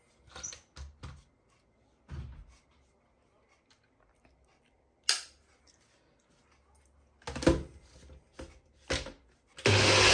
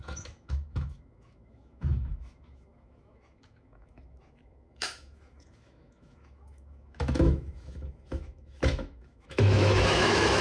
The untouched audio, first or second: first